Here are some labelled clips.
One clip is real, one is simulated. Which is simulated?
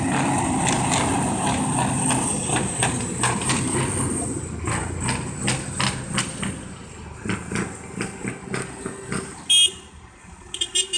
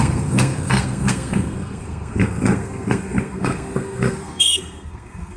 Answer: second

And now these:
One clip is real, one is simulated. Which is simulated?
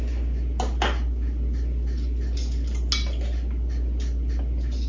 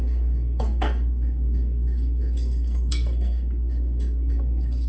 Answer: second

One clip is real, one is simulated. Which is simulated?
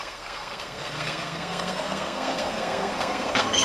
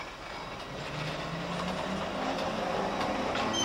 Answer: first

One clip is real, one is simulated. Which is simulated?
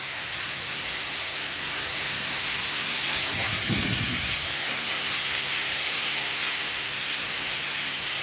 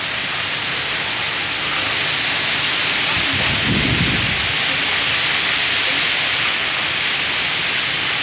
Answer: first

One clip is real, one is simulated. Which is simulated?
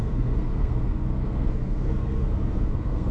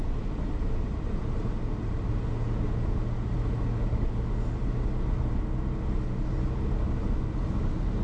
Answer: first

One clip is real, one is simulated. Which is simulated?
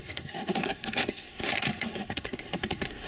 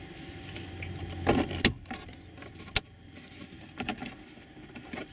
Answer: first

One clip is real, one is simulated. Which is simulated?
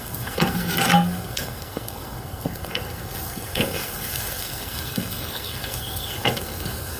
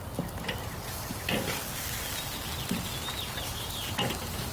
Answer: first